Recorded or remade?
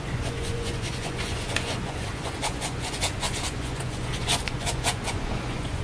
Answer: remade